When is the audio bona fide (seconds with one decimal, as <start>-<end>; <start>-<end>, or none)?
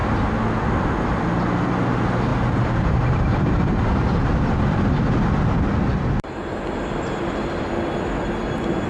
0.0-2.3; 4.3-8.9